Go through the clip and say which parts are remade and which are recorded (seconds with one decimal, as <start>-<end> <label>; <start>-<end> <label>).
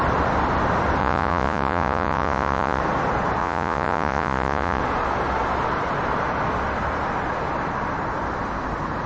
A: 0.0-1.0 recorded; 1.0-2.8 remade; 2.8-3.4 recorded; 3.4-4.8 remade; 4.8-9.1 recorded